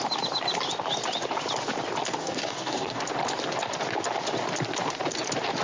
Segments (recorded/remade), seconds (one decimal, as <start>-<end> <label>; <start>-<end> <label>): 0.0-2.2 recorded; 2.2-3.0 remade; 3.0-5.6 recorded